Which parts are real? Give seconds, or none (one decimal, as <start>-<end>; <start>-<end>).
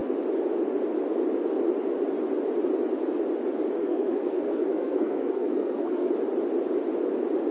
0.0-3.8; 6.1-7.5